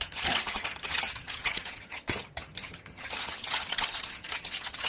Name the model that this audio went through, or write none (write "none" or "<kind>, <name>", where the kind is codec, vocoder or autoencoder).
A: vocoder, HiFi-GAN